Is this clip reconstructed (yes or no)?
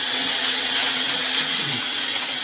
yes